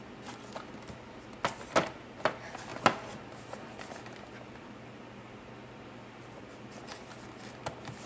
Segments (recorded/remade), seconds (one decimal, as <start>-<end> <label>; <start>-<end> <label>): 0.0-8.1 recorded